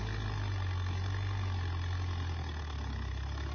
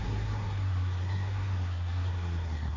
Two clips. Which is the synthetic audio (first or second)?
second